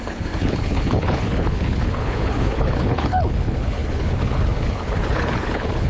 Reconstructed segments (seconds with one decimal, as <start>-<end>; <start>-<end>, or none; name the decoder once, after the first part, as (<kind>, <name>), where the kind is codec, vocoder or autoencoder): 0.0-5.9 (codec, HILCodec)